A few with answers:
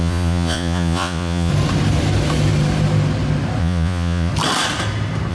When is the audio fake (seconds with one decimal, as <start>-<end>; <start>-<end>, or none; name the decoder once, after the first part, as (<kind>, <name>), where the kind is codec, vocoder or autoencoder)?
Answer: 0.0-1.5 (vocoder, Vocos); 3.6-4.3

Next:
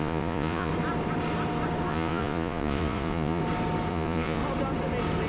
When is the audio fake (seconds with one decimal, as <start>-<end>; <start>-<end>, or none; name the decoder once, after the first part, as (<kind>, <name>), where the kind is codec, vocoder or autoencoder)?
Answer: 0.0-0.7 (vocoder, Vocos); 1.9-3.4; 3.9-4.4

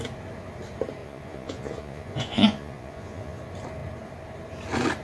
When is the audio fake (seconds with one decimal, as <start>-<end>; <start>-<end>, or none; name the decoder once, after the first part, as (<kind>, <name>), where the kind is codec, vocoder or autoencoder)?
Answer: 1.0-3.4 (vocoder, Vocos)